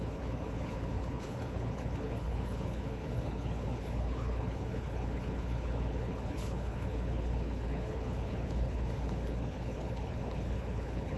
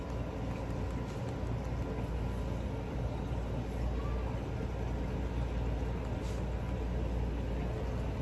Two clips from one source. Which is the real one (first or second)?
second